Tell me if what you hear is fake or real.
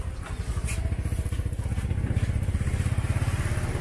real